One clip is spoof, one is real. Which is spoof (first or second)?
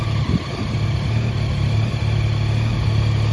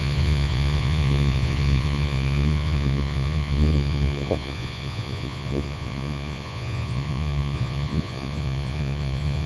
second